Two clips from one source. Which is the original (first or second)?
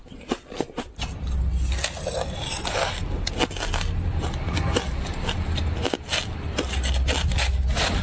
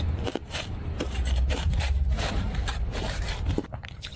first